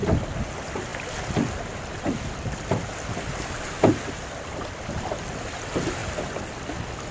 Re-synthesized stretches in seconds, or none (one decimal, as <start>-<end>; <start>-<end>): none